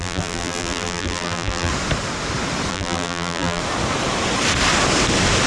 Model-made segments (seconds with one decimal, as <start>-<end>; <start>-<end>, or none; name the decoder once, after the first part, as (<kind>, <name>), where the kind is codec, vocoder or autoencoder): 0.0-1.7 (vocoder, BigVGAN v2); 2.7-3.6